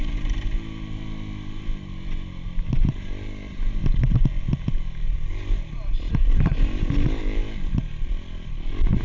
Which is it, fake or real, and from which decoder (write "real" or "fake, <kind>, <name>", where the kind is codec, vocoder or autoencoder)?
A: real